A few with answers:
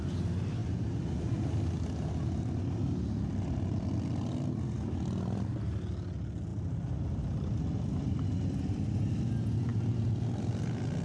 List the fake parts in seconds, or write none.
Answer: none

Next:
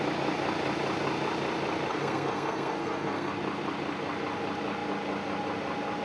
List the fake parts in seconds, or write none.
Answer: 1.9-3.3 (codec, SNAC)